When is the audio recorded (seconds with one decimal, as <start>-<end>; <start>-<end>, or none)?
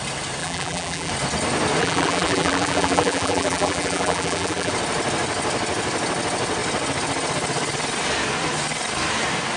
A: 0.0-0.4; 1.1-1.8; 4.7-9.6